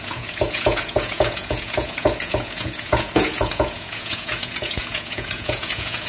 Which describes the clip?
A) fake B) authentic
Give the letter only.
A